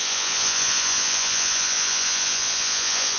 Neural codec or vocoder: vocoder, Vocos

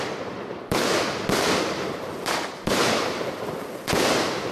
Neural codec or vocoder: vocoder, BigVGAN v2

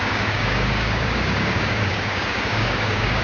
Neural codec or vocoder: codec, DAC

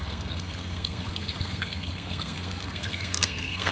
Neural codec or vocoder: codec, SNAC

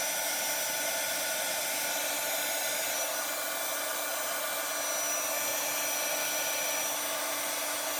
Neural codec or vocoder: none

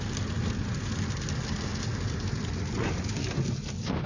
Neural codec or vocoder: none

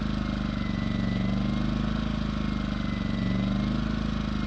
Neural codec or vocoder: none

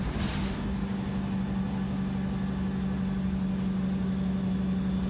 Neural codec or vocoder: none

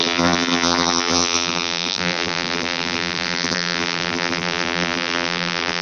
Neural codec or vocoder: vocoder, BigVGAN v2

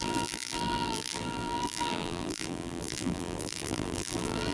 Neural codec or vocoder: vocoder, BigVGAN v2